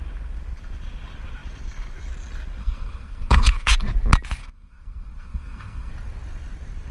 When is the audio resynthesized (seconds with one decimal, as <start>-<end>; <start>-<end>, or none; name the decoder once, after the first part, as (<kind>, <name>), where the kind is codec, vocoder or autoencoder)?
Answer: 2.6-3.7 (codec, SNAC); 4.4-5.9